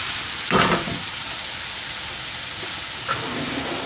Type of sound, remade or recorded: recorded